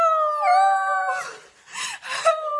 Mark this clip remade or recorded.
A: recorded